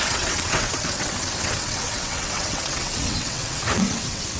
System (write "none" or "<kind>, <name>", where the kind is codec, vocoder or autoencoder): vocoder, WaveNeXt